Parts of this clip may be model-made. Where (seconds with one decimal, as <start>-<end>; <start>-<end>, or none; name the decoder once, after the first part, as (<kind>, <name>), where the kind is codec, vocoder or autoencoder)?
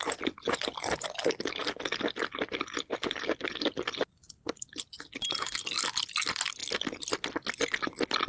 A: none